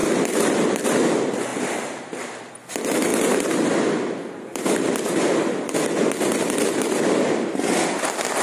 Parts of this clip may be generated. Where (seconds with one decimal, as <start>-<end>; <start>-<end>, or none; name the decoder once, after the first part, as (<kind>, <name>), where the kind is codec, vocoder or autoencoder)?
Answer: 0.0-1.0 (vocoder, BigVGAN v2); 3.1-5.7